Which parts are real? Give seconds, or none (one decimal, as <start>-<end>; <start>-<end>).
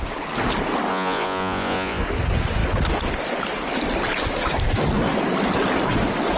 0.0-0.9; 2.0-6.4